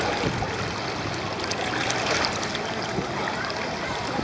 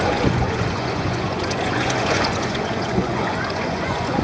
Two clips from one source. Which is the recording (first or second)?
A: first